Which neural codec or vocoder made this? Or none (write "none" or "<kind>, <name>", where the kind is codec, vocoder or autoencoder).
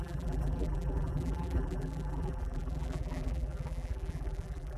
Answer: vocoder, BigVGAN v2